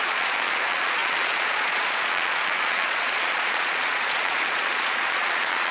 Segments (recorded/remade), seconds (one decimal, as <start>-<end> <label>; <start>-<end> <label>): 0.0-5.7 remade